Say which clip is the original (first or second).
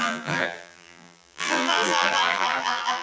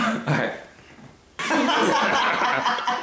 second